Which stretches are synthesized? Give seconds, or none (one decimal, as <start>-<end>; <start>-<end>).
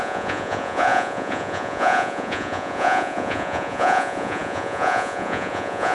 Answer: 0.0-5.9